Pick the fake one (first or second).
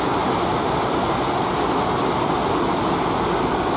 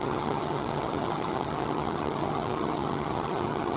second